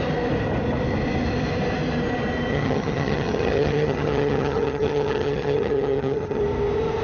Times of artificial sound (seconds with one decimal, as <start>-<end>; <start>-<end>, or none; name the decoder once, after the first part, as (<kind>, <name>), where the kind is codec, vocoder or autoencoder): 2.5-6.4 (vocoder, HiFi-GAN)